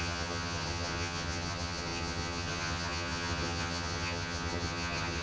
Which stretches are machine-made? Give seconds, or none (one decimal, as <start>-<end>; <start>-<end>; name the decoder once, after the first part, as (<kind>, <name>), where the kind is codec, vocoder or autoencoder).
0.0-5.2 (vocoder, HiFi-GAN)